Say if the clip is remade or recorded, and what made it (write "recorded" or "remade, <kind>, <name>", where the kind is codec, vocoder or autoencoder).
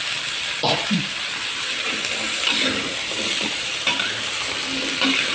remade, vocoder, BigVGAN v2